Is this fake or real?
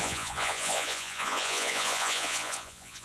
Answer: fake